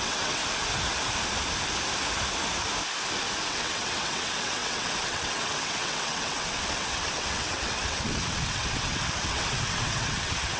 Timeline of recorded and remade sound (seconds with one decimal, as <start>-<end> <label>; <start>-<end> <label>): 0.0-0.4 remade; 0.4-3.5 recorded; 3.5-10.6 remade